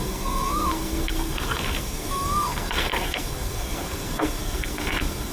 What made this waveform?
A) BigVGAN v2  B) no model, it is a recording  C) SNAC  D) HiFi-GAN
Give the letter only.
C